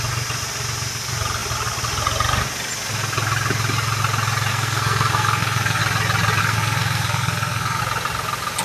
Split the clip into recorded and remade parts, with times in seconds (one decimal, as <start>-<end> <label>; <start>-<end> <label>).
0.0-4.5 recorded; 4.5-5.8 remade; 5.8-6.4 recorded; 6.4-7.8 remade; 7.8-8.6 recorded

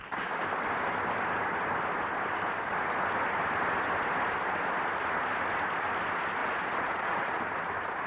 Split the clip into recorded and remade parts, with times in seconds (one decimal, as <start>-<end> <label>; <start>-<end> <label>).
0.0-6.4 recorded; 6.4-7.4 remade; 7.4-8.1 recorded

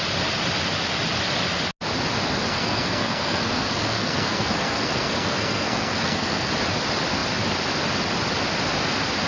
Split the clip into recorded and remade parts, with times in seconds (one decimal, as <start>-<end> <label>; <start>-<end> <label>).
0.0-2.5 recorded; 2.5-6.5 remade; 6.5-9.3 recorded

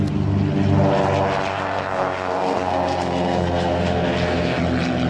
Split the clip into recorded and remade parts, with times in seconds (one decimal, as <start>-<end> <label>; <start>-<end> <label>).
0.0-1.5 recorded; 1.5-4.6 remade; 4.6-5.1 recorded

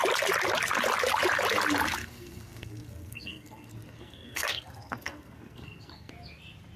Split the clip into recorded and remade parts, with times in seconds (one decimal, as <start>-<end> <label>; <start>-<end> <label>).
0.0-2.0 recorded; 2.0-6.1 remade; 6.1-6.8 recorded

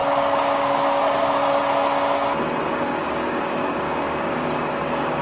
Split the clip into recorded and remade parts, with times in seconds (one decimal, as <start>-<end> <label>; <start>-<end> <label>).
0.0-1.6 remade; 1.6-2.7 recorded; 2.7-5.2 remade

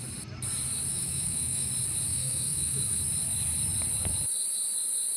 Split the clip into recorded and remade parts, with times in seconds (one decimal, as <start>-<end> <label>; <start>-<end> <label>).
0.0-0.9 recorded; 0.9-1.7 remade; 1.7-2.1 recorded; 2.1-3.0 remade; 3.0-5.2 recorded